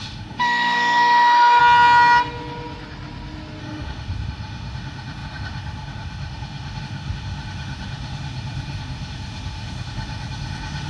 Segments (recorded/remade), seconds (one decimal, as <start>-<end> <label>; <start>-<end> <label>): 0.0-1.6 remade; 1.6-3.6 recorded; 3.6-10.9 remade